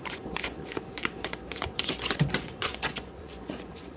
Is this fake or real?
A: fake